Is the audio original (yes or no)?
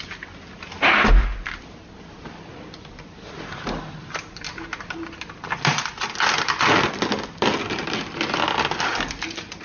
yes